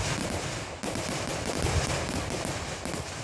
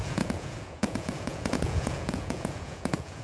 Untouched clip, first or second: first